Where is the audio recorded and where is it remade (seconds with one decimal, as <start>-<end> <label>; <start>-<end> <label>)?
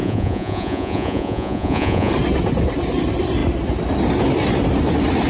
0.0-2.1 remade; 2.1-5.3 recorded